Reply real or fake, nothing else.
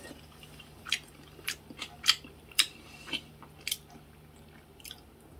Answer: fake